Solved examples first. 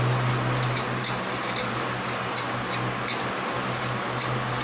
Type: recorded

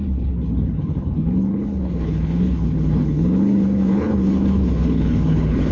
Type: remade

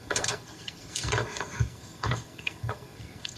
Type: remade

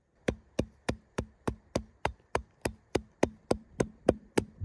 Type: remade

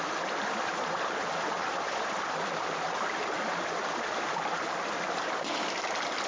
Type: recorded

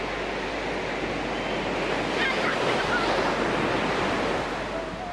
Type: recorded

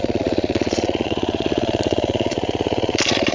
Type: remade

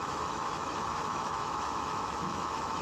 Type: remade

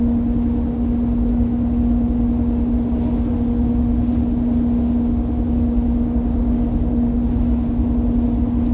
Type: recorded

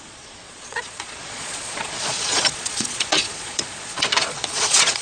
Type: remade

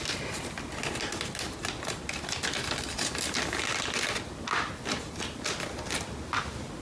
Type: recorded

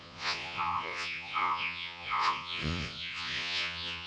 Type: remade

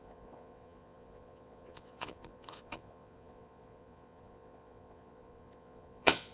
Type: remade